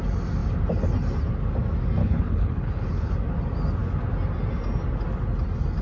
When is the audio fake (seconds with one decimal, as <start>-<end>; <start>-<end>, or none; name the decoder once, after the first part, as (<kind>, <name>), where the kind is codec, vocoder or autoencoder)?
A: 2.0-3.1 (codec, HILCodec)